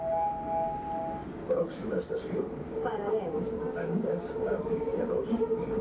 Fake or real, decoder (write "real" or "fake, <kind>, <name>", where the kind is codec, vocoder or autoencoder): fake, codec, DAC